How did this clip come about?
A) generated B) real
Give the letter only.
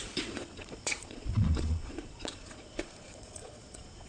A